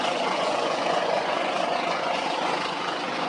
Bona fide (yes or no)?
no